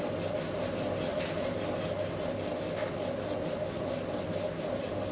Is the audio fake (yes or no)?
no